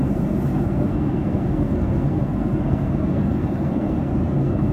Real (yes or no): no